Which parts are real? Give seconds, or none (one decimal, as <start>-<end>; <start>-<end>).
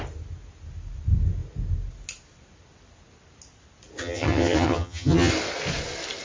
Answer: 0.0-4.0; 5.3-6.2